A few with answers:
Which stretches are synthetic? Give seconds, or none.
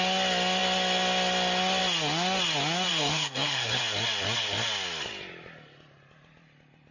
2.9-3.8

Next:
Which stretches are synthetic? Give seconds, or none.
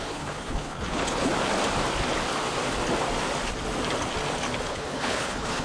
0.0-1.3; 4.7-5.6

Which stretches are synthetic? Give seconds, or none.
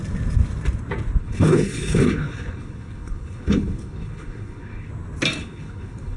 1.2-4.9; 5.4-6.2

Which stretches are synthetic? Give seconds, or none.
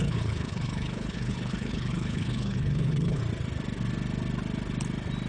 0.0-3.2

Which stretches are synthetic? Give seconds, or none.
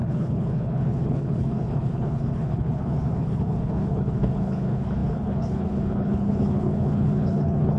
0.0-7.8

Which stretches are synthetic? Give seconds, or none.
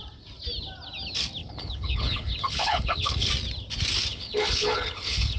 1.4-3.3; 4.1-5.4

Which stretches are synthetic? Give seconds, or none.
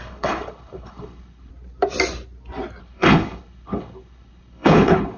0.0-1.5; 2.8-5.2